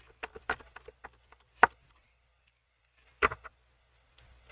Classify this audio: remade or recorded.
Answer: remade